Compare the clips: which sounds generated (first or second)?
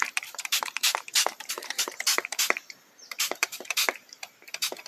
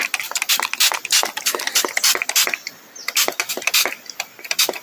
first